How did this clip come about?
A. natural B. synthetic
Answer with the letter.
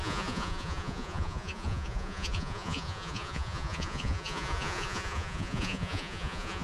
B